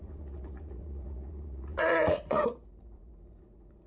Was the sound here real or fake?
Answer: fake